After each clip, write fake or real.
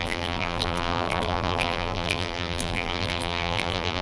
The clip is fake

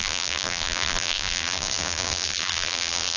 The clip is fake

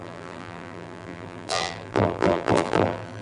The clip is fake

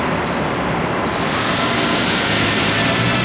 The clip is real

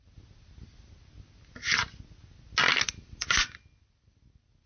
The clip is real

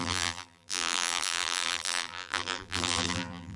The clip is fake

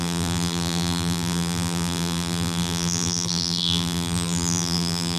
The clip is fake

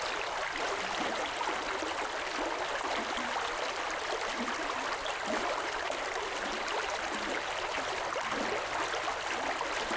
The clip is real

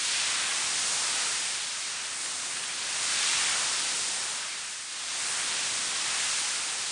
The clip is real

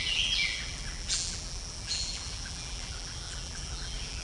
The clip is fake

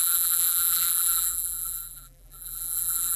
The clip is fake